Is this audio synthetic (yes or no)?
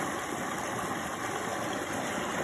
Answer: no